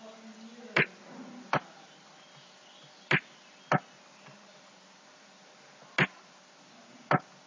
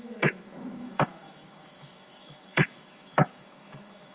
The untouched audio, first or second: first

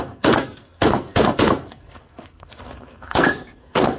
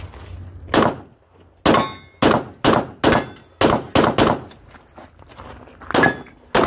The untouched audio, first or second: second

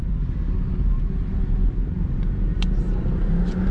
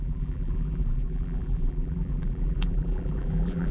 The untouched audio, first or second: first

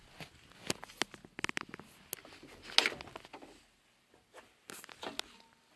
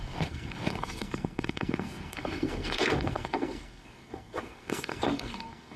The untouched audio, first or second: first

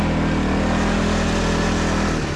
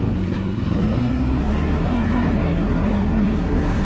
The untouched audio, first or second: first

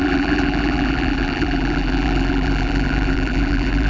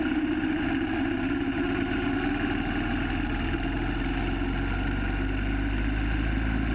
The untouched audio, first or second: second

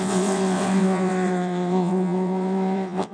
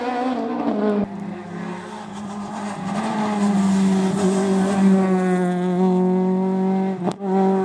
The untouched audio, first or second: second